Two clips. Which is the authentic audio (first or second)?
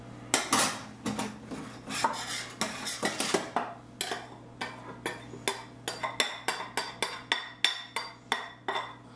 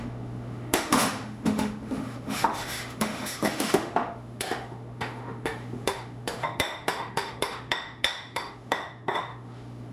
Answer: first